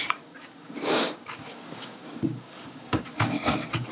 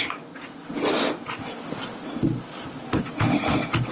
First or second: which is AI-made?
first